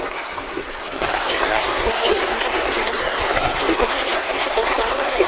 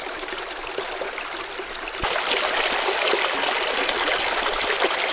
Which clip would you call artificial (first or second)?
first